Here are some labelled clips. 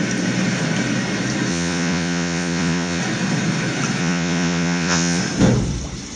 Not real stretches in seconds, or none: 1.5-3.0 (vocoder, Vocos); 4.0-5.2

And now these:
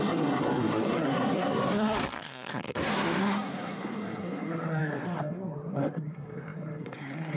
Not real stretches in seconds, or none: 0.0-7.4 (codec, SNAC)

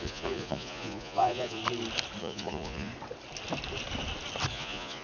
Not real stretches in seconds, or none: 0.0-1.6 (vocoder, Vocos); 2.2-2.9; 4.5-5.0

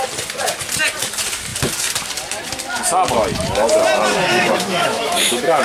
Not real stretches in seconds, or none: 4.3-5.6 (autoencoder, DAC-VAE)

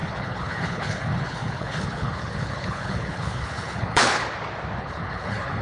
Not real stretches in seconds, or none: 0.0-4.2 (codec, HILCodec); 4.8-5.6